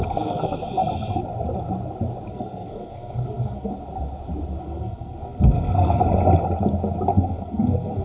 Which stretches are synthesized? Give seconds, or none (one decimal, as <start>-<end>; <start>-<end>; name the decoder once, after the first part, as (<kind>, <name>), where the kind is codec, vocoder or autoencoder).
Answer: 0.0-0.8 (codec, SNAC); 2.3-3.7; 4.6-6.0; 7.1-8.0